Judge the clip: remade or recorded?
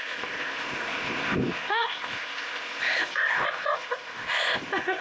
remade